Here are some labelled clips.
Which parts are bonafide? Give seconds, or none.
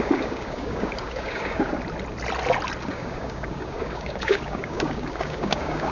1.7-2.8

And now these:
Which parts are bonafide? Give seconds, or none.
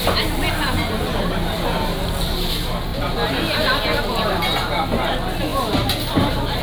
0.0-6.6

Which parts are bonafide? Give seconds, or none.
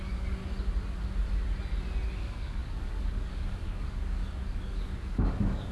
0.4-2.2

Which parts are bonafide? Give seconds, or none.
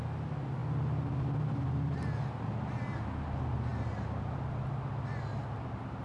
0.0-6.0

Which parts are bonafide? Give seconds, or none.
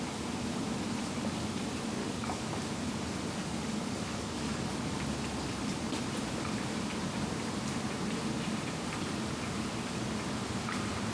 0.0-2.0; 2.6-3.4; 5.0-11.1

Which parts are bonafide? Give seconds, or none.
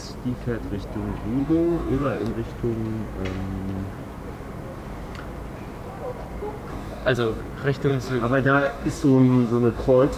0.0-1.4; 2.3-6.7; 7.4-7.9